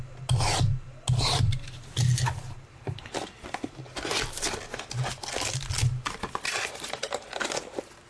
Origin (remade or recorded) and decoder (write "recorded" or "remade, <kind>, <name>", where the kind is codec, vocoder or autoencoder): recorded